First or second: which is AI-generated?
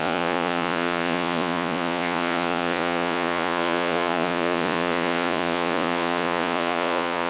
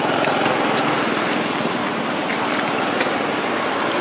first